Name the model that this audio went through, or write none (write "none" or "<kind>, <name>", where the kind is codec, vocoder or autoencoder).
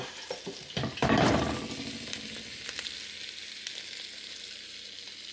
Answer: none